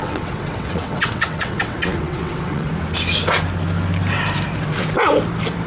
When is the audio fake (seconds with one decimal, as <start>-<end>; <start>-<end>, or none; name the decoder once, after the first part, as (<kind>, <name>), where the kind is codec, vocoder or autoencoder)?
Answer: 0.0-2.7 (vocoder, WaveNeXt)